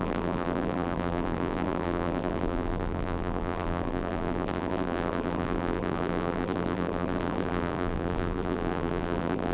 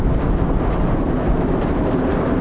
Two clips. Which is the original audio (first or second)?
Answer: second